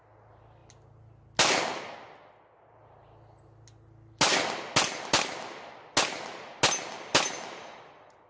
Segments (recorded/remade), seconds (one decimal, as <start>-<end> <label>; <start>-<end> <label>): 0.0-8.3 recorded

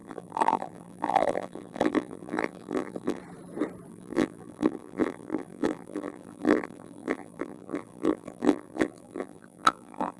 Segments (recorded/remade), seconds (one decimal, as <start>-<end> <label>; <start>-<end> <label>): 0.0-3.2 remade; 3.2-3.9 recorded; 3.9-10.2 remade

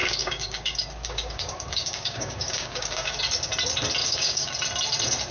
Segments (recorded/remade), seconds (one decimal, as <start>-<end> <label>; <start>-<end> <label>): 0.0-3.2 remade; 3.2-4.0 recorded; 4.0-4.5 remade; 4.5-5.3 recorded